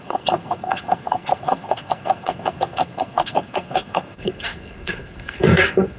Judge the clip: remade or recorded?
remade